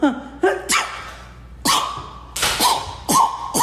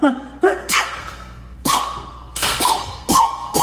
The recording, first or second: first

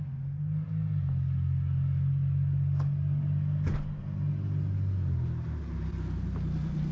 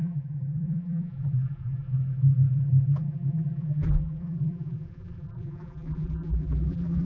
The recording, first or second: first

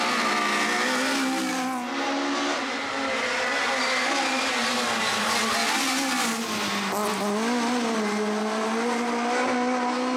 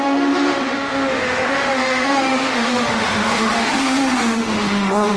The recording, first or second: first